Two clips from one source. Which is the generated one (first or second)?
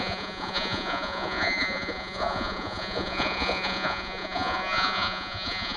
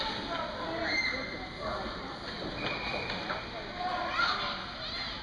first